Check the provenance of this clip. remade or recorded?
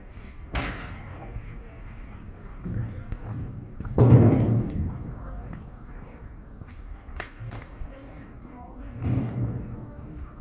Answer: remade